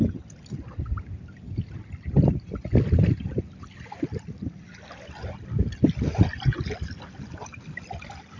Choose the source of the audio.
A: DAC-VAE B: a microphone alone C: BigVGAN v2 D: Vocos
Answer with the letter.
B